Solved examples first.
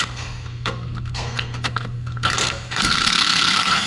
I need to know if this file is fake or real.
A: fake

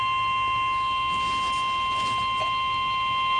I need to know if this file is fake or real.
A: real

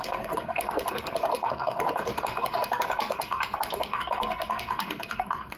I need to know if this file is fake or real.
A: fake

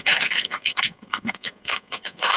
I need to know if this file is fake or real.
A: fake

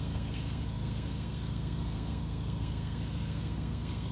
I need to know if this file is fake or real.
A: fake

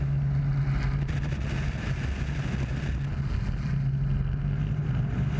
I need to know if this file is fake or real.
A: real